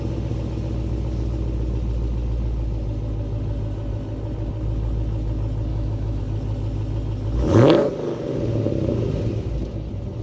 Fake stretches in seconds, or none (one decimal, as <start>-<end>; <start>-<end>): 5.7-6.2